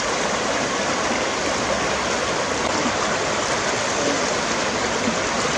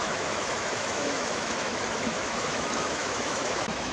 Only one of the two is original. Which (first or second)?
first